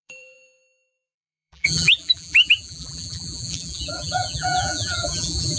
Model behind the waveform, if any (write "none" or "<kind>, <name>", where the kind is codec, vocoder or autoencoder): vocoder, BigVGAN v2